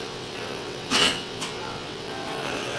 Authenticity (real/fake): fake